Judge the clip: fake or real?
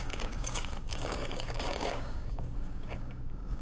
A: fake